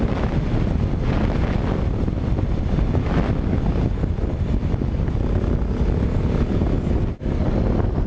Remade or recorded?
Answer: recorded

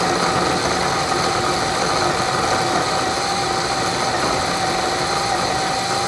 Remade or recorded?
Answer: recorded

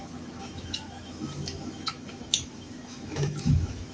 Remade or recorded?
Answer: remade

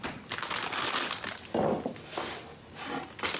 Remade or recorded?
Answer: recorded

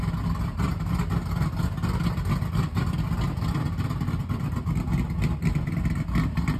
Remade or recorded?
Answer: recorded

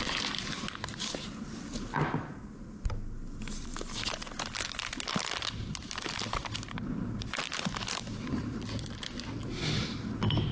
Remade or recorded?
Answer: recorded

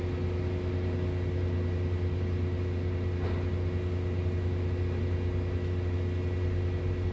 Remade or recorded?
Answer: recorded